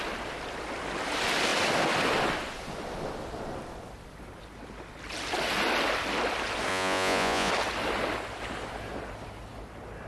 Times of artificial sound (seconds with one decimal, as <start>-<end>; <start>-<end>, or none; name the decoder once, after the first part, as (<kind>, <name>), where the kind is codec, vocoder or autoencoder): 6.7-7.5 (vocoder, Vocos)